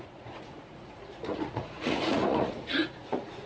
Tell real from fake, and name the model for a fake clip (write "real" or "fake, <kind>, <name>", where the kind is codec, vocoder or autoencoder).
fake, vocoder, Vocos